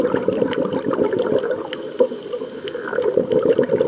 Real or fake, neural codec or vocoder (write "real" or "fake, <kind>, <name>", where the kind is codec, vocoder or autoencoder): real